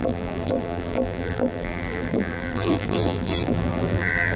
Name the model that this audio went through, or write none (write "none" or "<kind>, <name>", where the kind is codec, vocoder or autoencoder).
vocoder, BigVGAN v2